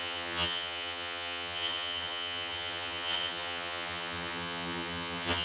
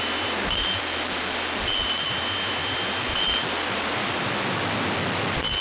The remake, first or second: first